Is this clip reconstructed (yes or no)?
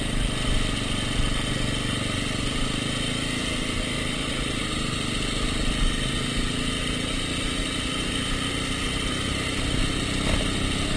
no